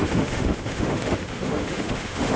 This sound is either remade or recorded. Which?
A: remade